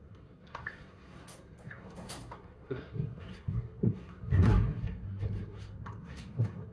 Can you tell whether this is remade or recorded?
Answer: remade